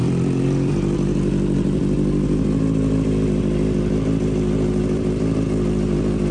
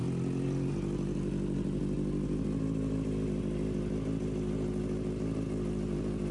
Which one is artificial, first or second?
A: first